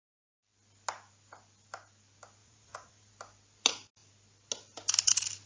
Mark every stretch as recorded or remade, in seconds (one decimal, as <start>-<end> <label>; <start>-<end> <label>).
0.0-2.4 recorded; 2.4-3.1 remade; 3.1-5.5 recorded